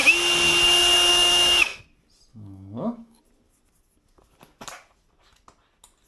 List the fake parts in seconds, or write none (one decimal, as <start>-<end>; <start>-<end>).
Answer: 1.1-1.8; 2.3-3.2